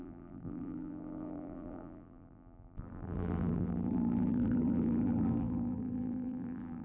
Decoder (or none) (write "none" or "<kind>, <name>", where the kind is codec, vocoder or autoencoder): vocoder, BigVGAN v2